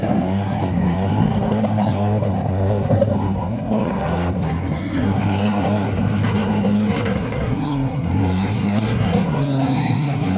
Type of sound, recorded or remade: remade